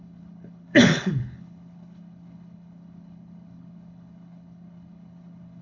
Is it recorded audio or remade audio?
remade